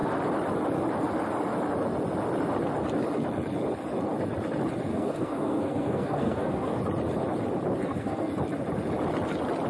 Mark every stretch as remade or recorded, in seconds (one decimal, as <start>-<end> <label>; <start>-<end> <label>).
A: 0.0-4.9 recorded; 4.9-6.8 remade; 6.8-7.8 recorded; 7.8-8.3 remade; 8.3-9.7 recorded